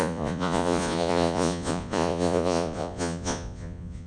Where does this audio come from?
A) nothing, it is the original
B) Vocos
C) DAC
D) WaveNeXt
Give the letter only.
B